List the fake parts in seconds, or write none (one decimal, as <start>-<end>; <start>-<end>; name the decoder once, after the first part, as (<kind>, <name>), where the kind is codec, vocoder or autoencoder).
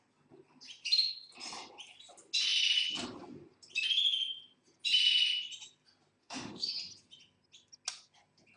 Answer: 6.2-6.7 (autoencoder, DAC-VAE)